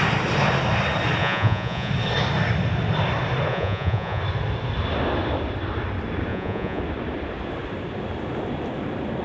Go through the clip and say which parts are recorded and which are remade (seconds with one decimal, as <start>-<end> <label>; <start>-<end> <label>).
0.0-1.2 recorded; 1.2-1.9 remade; 1.9-3.5 recorded; 3.5-4.2 remade; 4.2-6.3 recorded; 6.3-6.8 remade; 6.8-9.2 recorded